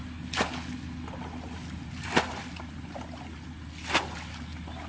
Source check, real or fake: real